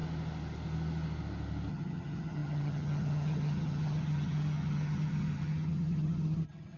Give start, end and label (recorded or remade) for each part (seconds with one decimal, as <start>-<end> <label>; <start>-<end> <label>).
0.0-1.7 recorded; 1.7-6.8 remade